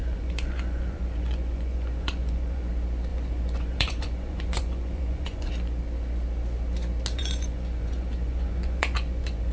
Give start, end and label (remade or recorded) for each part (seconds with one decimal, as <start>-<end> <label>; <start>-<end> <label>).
0.0-2.7 remade; 2.7-3.1 recorded; 3.1-5.5 remade; 5.5-7.2 recorded; 7.2-9.5 remade